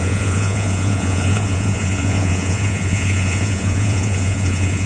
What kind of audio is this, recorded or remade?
remade